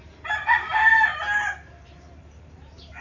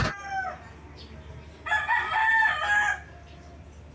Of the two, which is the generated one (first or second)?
first